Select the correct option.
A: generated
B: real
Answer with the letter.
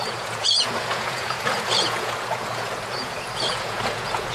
A